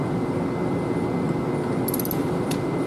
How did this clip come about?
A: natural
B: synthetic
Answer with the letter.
A